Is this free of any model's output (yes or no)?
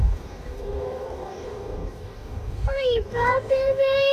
no